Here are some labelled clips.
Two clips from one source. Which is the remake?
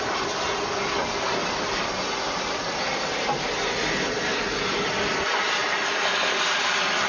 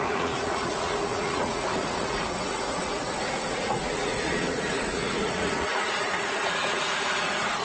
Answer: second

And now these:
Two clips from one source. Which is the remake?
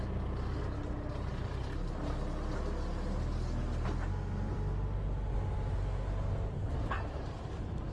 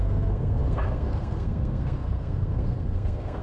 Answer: second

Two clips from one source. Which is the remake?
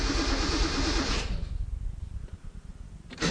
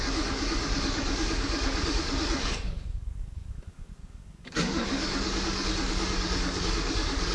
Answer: second